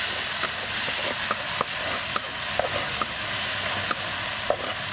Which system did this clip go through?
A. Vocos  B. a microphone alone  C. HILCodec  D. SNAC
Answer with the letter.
B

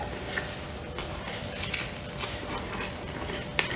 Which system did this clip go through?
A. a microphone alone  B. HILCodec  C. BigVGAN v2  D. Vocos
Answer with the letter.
A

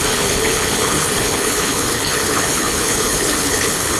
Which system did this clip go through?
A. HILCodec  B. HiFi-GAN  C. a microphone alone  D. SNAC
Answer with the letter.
A